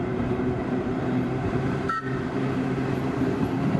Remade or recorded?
remade